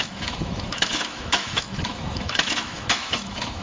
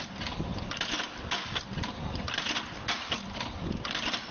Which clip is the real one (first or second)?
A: second